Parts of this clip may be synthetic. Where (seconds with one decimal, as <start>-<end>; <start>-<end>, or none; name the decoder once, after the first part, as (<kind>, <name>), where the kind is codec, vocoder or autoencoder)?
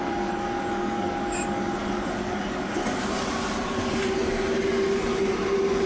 0.0-2.8 (codec, DAC)